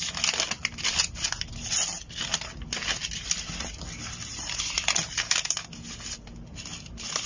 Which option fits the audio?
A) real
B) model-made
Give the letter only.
A